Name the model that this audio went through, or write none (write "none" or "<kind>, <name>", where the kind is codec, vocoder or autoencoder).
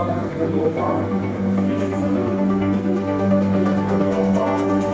codec, SNAC